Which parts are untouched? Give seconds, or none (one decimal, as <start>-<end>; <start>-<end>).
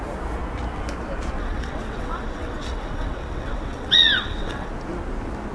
0.0-1.4; 4.7-5.5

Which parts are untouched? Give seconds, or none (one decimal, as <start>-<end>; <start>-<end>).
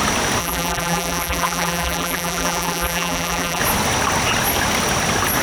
0.0-0.4; 3.6-5.4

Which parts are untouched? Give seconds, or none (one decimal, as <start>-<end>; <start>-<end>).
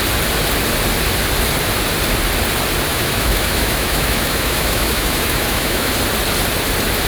0.0-2.9; 5.9-7.1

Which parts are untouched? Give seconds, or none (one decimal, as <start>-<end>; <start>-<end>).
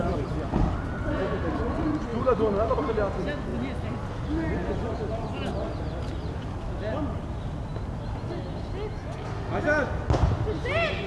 0.0-11.1